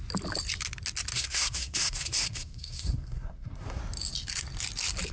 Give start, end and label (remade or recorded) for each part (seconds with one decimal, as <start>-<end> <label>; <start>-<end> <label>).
0.0-1.1 recorded; 1.1-3.8 remade; 3.8-5.1 recorded